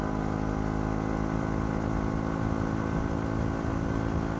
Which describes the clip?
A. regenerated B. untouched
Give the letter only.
B